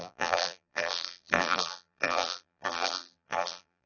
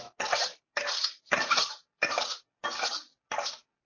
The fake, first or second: first